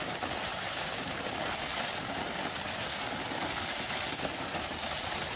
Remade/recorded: remade